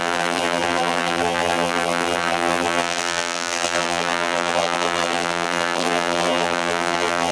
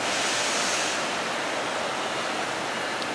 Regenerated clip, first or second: first